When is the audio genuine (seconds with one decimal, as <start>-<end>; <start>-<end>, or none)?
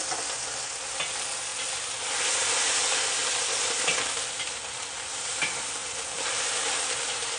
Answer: 0.0-7.4